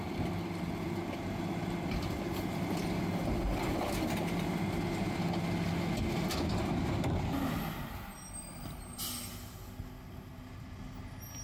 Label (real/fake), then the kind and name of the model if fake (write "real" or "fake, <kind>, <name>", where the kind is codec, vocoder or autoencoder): real